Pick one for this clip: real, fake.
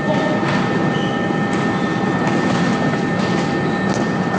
real